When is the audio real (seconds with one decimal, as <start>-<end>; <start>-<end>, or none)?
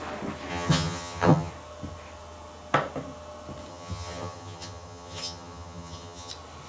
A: 0.0-0.5; 1.5-3.7; 6.3-6.7